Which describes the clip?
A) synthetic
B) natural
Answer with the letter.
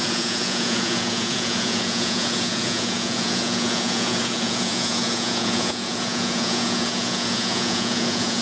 A